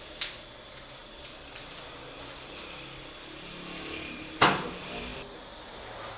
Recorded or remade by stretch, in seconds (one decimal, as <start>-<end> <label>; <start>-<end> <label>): 0.0-6.2 recorded